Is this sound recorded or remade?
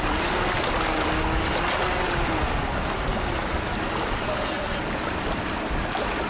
recorded